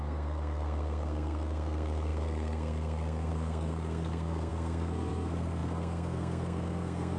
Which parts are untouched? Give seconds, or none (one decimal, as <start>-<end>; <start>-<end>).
none